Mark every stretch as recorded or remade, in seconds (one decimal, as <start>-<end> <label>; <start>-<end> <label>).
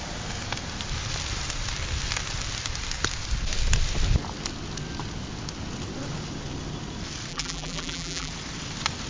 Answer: 0.0-7.3 recorded; 7.3-8.3 remade; 8.3-9.1 recorded